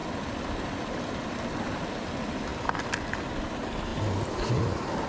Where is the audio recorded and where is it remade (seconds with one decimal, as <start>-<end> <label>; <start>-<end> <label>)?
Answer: 0.0-5.1 recorded